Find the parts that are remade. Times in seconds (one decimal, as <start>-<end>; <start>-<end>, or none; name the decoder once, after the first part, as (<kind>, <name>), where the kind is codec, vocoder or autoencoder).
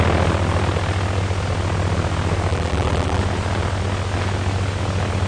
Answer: 2.5-3.2 (vocoder, BigVGAN v2)